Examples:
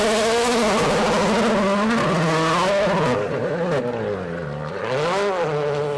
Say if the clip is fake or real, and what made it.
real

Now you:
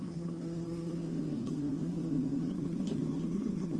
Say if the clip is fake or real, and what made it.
fake, codec, SNAC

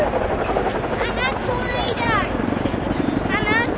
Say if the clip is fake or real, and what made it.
real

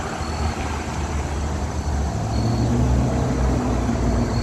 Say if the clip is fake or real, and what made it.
real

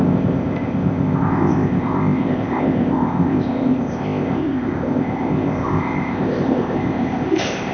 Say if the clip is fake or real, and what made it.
fake, codec, ZipCodec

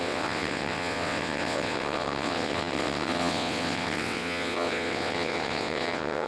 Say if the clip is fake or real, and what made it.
fake, vocoder, WaveNeXt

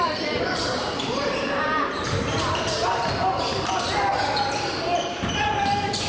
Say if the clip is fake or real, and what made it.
fake, vocoder, BigVGAN v2